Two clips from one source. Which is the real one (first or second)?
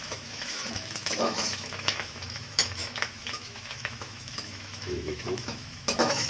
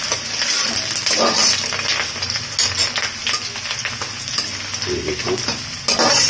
second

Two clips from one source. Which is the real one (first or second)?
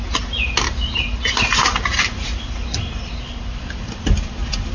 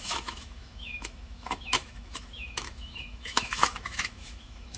first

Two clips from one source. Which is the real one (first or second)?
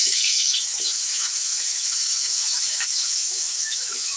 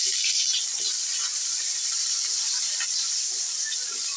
second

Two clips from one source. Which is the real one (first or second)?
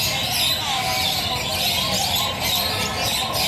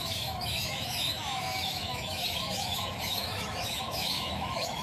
first